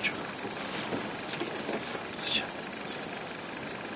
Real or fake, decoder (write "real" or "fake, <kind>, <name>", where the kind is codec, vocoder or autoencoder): real